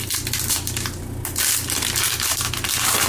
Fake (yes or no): no